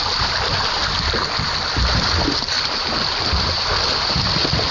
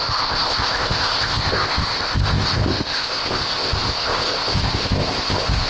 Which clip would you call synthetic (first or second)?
second